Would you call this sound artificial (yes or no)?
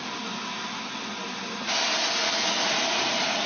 no